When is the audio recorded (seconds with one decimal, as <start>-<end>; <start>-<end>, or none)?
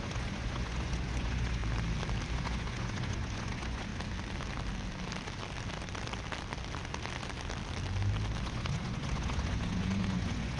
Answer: 1.6-2.3; 3.9-8.4